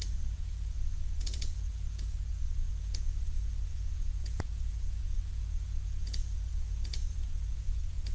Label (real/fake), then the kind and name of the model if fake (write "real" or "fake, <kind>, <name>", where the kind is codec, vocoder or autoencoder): fake, vocoder, Vocos